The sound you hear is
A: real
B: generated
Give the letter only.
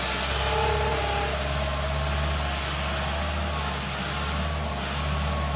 A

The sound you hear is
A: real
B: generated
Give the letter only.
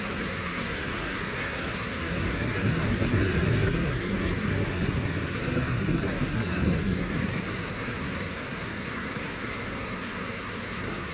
B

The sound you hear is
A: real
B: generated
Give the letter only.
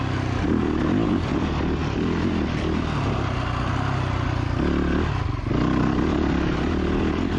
A